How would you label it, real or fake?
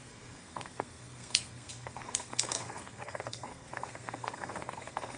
fake